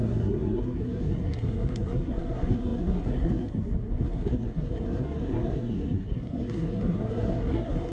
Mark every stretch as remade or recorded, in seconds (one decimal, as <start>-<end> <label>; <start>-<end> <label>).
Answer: 0.0-7.9 remade